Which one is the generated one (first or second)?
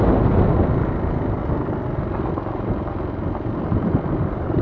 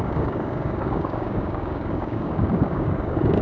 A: second